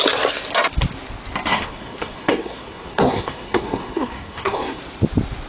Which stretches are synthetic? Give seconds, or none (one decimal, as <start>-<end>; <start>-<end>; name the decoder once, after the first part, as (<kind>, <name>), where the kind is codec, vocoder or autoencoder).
1.5-4.8 (codec, SNAC)